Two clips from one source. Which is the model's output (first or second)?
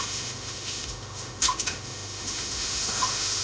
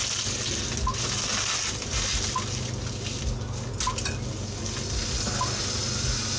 first